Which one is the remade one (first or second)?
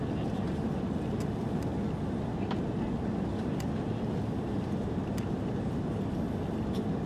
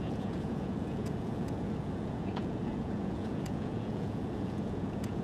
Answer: second